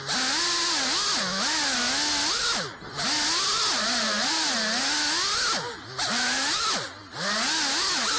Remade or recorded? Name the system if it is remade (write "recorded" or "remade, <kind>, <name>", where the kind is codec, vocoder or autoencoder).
recorded